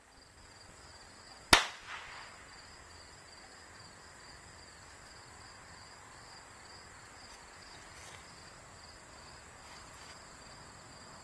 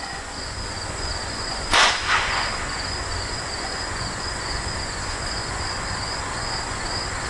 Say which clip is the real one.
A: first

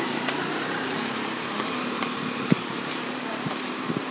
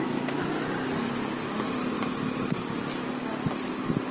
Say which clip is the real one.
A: second